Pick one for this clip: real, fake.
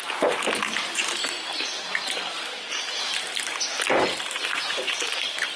fake